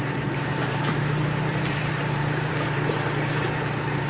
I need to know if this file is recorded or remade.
remade